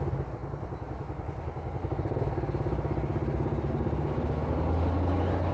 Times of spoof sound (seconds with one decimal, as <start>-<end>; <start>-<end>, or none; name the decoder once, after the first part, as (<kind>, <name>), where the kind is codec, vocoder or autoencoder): none